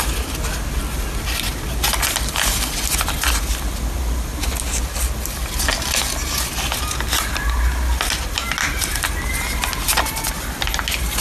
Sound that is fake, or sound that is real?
real